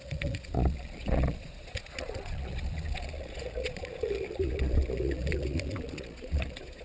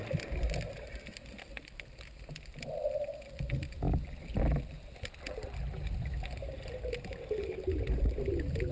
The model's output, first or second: first